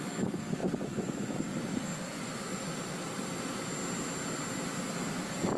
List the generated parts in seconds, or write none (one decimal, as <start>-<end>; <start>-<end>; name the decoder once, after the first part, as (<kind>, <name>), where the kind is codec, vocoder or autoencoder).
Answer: 0.6-1.3 (vocoder, Vocos); 2.1-2.8